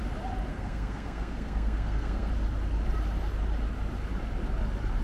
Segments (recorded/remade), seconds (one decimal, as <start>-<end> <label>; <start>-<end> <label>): 0.0-0.5 recorded; 0.5-2.3 remade; 2.3-5.0 recorded